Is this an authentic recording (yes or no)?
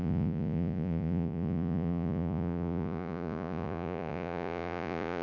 no